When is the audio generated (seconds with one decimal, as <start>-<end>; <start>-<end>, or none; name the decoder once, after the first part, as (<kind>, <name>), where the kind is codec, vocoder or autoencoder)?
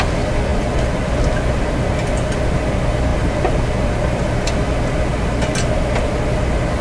none